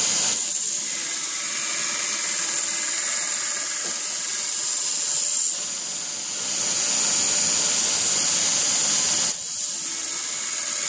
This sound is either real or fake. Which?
real